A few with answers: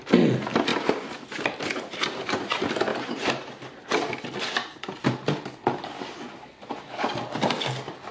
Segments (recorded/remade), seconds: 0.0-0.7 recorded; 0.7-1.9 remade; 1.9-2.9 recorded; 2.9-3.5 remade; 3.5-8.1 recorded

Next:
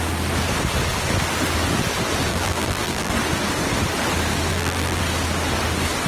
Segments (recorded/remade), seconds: 0.0-2.3 recorded; 2.3-3.1 remade; 3.1-4.5 recorded; 4.5-5.0 remade; 5.0-6.1 recorded

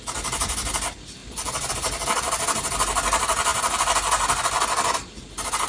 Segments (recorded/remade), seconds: 0.0-1.2 recorded; 1.2-1.7 remade; 1.7-5.7 recorded